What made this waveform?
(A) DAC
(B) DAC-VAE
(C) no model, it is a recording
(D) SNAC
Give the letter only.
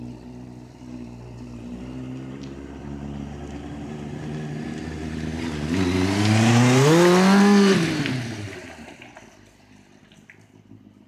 C